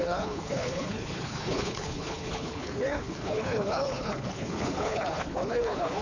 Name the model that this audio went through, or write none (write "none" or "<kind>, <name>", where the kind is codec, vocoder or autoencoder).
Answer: codec, HILCodec